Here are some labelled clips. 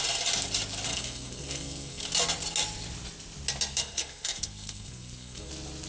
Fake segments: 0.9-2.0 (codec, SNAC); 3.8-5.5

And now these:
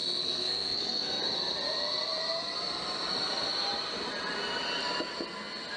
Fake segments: 0.0-1.2 (codec, SNAC)